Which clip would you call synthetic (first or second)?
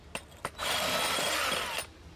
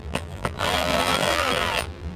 second